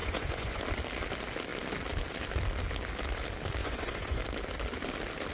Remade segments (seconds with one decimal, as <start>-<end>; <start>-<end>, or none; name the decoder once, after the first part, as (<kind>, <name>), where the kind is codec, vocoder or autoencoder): 0.0-0.6 (vocoder, Vocos); 3.6-4.2